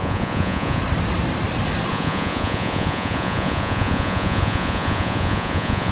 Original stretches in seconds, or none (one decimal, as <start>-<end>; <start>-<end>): 0.8-1.9